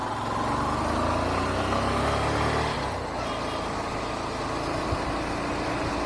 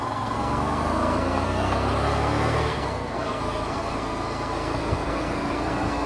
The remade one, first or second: second